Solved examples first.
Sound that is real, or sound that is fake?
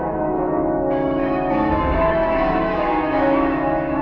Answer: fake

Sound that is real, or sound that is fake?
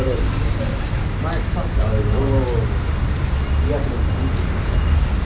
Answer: real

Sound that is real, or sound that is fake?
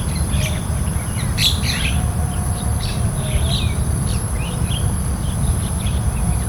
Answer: fake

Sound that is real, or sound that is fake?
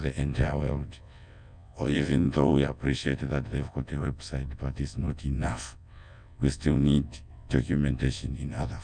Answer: fake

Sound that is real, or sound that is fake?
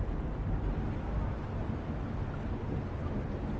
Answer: real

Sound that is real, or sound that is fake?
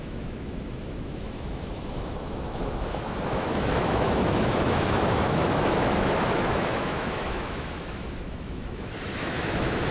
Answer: fake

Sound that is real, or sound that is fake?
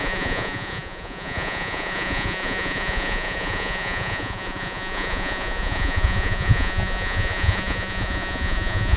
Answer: fake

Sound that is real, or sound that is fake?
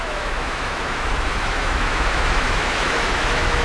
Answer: fake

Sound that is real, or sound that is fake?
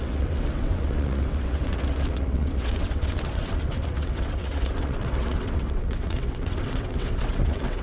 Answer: fake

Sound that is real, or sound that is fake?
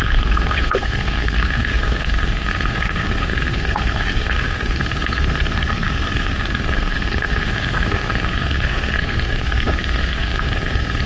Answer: fake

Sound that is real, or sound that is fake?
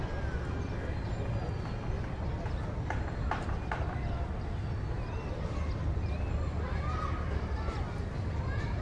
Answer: real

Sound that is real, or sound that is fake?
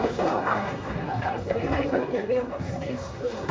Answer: fake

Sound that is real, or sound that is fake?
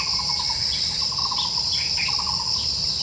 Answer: fake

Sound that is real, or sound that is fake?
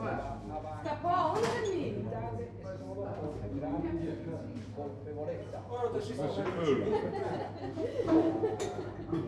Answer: real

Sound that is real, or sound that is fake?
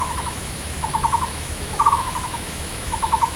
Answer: fake